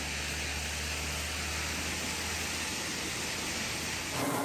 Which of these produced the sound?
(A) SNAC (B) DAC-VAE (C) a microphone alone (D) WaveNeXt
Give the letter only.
C